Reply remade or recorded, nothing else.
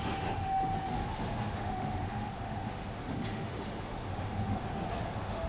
remade